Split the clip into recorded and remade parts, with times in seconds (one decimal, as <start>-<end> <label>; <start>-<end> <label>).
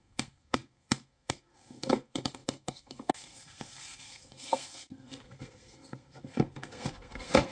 0.0-7.5 remade